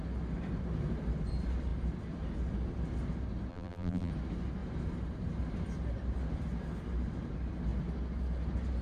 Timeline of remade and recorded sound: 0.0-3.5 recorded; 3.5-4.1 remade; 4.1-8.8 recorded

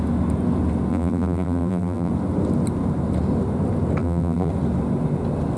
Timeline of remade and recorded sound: 0.0-0.9 recorded; 0.9-2.1 remade; 2.1-4.0 recorded; 4.0-4.5 remade; 4.5-5.6 recorded

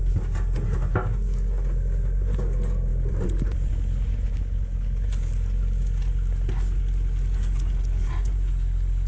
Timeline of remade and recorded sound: 0.0-2.9 recorded; 2.9-3.7 remade; 3.7-9.1 recorded

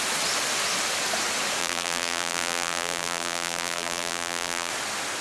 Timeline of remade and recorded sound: 0.0-1.6 recorded; 1.6-4.7 remade; 4.7-5.2 recorded

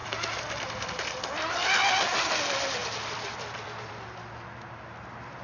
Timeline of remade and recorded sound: 0.0-2.8 recorded; 2.8-3.9 remade; 3.9-5.4 recorded

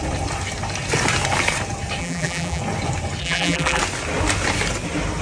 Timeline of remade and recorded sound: 0.0-2.0 recorded; 2.0-2.6 remade; 2.6-3.2 recorded; 3.2-3.8 remade; 3.8-5.2 recorded